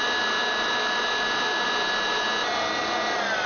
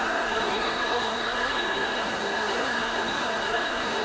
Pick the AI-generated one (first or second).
second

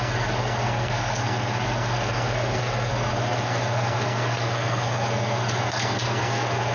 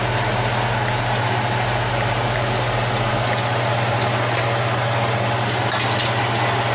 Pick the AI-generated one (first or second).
first